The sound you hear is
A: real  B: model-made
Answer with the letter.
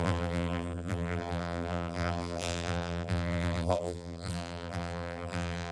B